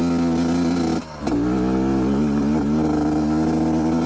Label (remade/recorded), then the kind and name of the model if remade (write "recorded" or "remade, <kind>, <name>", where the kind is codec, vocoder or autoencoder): recorded